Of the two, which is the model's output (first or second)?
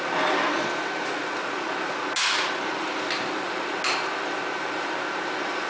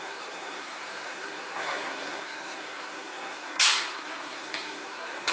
second